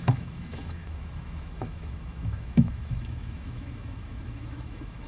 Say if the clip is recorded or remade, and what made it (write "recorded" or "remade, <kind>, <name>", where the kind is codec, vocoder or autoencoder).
remade, autoencoder, DAC-VAE